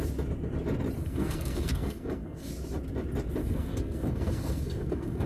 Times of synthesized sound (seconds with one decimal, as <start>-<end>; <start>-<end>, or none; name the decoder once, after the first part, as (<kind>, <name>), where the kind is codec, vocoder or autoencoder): 1.0-2.5 (codec, SNAC); 3.4-5.3